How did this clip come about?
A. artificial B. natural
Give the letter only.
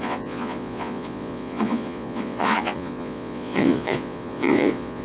A